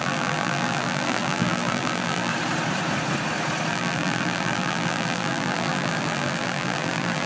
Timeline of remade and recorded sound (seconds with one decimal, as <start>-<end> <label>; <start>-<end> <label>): 0.0-2.3 remade; 2.3-3.7 recorded; 3.7-7.3 remade